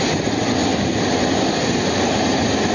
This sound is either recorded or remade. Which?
recorded